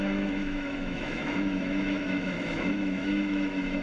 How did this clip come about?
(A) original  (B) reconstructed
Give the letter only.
B